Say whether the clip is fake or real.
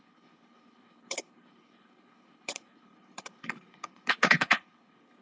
fake